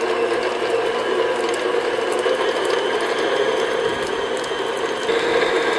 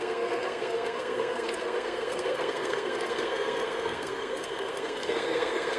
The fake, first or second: second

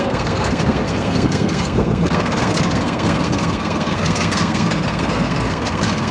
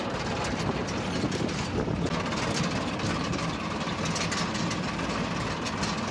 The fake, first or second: first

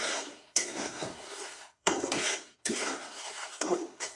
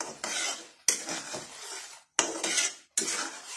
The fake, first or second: first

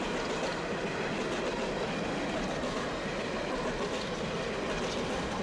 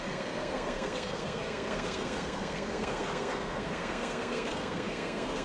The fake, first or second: second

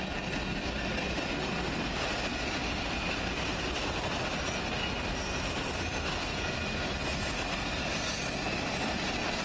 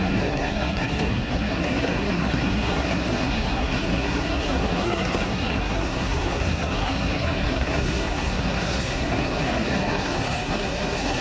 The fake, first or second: second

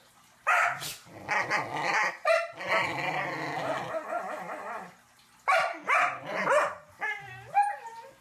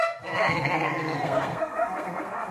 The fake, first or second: second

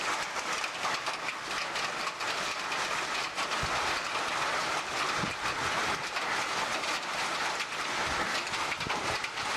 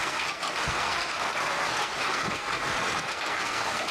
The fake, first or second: second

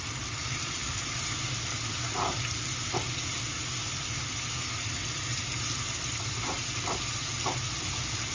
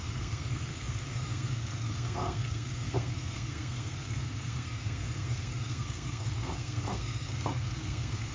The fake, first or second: second